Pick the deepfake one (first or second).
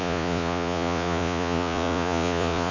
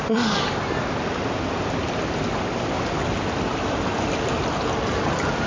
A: first